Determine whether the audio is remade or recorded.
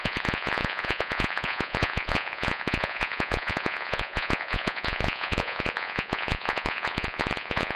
remade